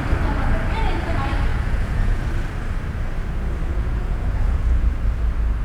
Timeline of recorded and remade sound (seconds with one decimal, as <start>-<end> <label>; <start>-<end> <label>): 0.0-1.5 recorded; 1.5-2.2 remade; 2.2-3.7 recorded; 3.7-4.9 remade; 4.9-5.6 recorded

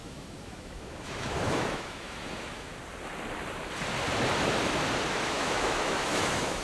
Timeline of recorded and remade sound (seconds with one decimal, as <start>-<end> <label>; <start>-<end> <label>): 0.0-2.7 remade; 2.7-5.1 recorded; 5.1-6.6 remade

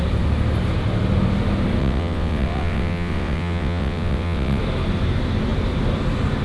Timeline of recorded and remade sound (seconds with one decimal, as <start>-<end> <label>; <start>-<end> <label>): 0.0-1.8 recorded; 1.8-4.6 remade; 4.6-6.4 recorded

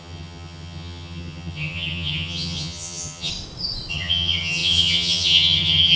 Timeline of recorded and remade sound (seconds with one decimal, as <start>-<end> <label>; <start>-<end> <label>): 0.0-3.3 remade; 3.3-3.9 recorded; 3.9-6.0 remade

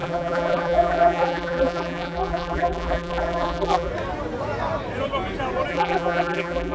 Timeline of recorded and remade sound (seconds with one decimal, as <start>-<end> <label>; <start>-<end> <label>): 0.0-3.9 remade; 3.9-5.7 recorded; 5.7-6.7 remade